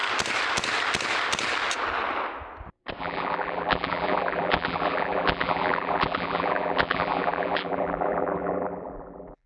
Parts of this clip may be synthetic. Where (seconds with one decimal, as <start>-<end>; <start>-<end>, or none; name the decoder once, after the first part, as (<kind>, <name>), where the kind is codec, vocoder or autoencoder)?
3.0-9.5 (vocoder, BigVGAN v2)